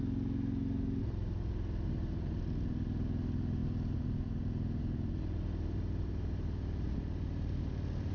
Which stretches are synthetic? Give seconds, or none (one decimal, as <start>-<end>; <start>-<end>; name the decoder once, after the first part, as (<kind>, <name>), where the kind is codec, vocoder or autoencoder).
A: none

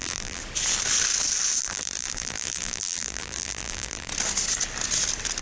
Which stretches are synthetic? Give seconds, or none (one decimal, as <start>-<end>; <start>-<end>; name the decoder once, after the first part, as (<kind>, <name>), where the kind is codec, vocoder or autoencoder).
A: 0.0-0.4 (vocoder, BigVGAN v2); 1.6-4.1

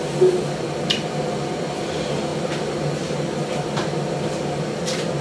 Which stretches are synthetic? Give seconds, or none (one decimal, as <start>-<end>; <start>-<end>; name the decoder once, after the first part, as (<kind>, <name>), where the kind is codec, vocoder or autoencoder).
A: none

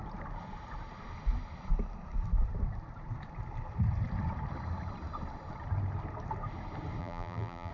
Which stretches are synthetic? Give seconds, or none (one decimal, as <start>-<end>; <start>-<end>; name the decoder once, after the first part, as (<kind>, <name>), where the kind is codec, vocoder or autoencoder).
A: 7.0-7.7 (vocoder, BigVGAN v2)

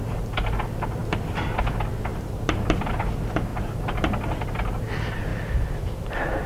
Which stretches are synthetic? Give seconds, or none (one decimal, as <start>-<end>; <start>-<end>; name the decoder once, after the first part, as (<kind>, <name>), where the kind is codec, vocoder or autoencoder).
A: 2.1-2.9 (vocoder, BigVGAN v2); 5.3-6.5

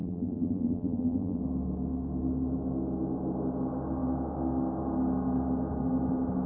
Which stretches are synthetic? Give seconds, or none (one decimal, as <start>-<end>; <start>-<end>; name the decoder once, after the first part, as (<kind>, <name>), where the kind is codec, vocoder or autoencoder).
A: 0.0-1.4 (vocoder, BigVGAN v2)

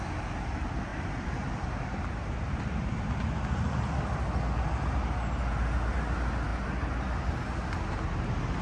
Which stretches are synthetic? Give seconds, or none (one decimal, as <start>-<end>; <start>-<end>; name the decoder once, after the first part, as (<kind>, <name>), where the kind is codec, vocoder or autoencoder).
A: 0.9-3.1 (vocoder, BigVGAN v2)

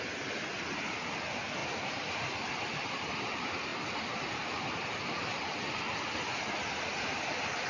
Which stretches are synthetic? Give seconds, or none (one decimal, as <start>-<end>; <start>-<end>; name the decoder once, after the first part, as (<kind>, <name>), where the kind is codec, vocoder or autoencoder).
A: 1.6-3.2 (vocoder, BigVGAN v2); 3.7-5.8